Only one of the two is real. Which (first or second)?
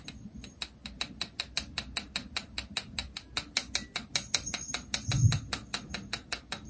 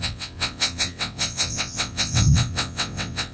first